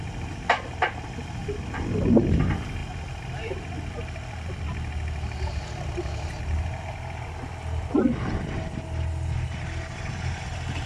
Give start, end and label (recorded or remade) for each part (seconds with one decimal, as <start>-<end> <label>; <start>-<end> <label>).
0.0-10.9 recorded